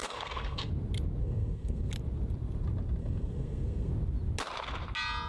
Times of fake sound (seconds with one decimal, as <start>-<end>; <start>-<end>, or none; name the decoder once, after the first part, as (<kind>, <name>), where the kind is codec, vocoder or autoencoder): 0.0-0.7 (codec, SNAC); 1.2-1.9; 3.0-3.9